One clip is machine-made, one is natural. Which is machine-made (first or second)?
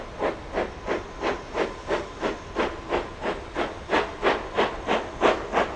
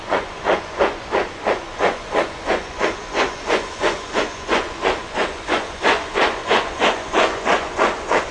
second